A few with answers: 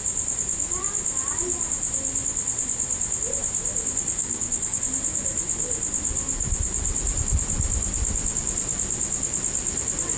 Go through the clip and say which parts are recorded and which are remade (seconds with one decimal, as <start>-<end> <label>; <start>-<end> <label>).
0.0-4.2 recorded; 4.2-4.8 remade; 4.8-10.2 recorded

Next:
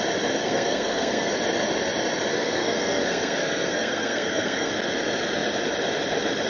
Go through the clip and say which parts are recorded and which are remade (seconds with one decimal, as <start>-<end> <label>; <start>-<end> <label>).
0.0-0.4 recorded; 0.4-1.3 remade; 1.3-2.3 recorded; 2.3-4.7 remade; 4.7-6.5 recorded

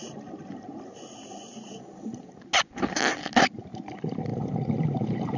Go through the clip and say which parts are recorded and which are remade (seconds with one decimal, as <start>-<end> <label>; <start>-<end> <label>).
0.0-5.4 recorded

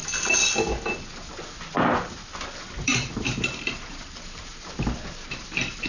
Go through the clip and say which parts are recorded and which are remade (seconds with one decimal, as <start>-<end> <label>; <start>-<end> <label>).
0.0-2.8 recorded; 2.8-4.5 remade; 4.5-5.9 recorded